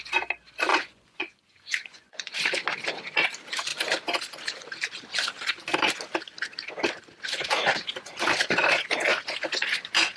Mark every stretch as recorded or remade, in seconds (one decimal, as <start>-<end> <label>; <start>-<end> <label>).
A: 0.0-0.7 recorded; 0.7-2.4 remade; 2.4-10.2 recorded